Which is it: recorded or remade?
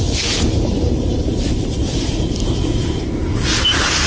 remade